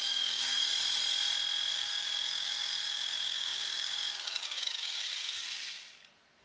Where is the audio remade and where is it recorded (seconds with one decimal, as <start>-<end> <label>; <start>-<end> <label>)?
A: 0.0-0.7 remade; 0.7-1.7 recorded; 1.7-5.4 remade; 5.4-6.4 recorded